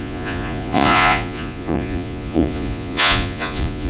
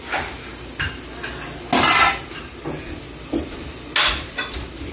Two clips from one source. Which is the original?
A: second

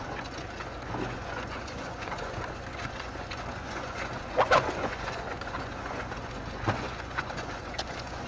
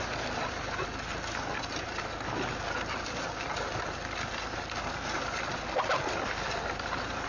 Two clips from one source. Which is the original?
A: second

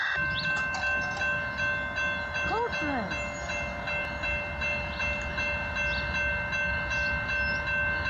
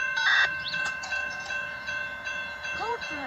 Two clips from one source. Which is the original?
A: first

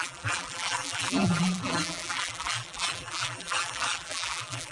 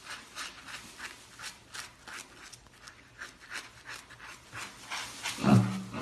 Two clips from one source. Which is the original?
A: second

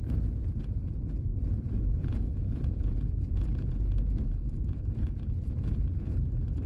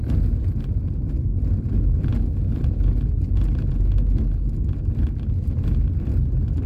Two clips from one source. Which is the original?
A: second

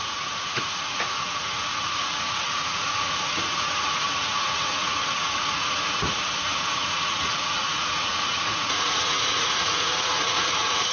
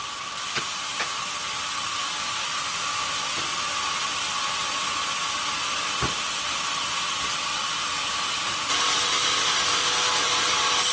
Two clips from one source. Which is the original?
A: second